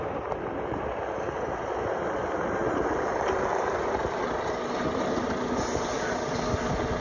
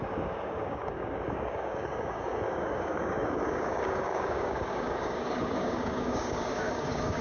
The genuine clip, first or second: first